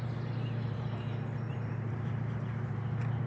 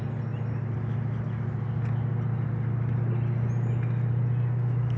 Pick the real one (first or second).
second